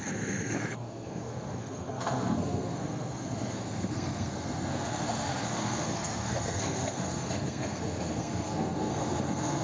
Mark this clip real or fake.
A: fake